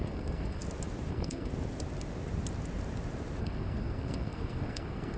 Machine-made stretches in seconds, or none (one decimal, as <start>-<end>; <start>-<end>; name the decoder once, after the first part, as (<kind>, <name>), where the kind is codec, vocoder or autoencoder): 0.0-0.6 (codec, SNAC); 1.1-1.5; 3.4-5.2